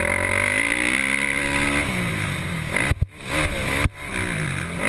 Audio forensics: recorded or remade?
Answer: recorded